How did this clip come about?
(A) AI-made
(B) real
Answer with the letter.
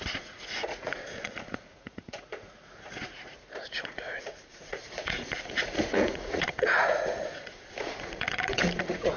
A